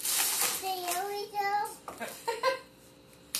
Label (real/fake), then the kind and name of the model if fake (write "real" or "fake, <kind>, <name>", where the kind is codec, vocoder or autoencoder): real